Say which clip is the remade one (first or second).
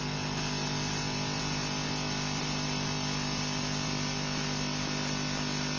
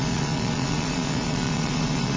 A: second